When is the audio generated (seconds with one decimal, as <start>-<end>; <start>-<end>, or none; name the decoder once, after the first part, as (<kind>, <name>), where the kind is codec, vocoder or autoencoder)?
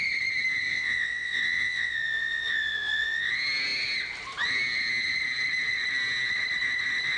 0.7-3.3 (vocoder, WaveNeXt)